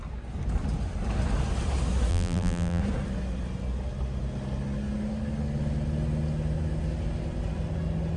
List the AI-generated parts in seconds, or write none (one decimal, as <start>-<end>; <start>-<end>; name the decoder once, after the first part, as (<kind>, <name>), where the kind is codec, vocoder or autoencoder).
2.1-2.8 (vocoder, BigVGAN v2)